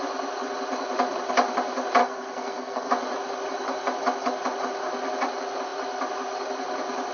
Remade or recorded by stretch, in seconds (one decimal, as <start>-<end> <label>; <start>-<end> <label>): 0.0-2.0 recorded; 2.0-2.9 remade; 2.9-7.1 recorded